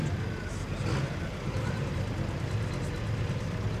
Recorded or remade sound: recorded